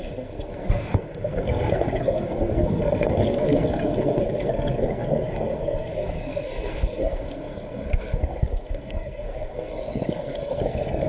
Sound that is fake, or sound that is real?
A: fake